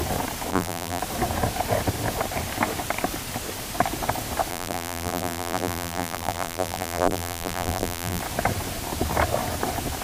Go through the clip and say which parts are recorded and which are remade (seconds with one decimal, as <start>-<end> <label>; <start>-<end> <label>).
0.0-0.5 recorded; 0.5-1.0 remade; 1.0-4.5 recorded; 4.5-8.2 remade; 8.2-10.0 recorded